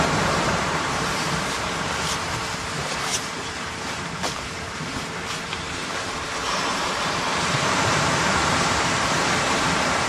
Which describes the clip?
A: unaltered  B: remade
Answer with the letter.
B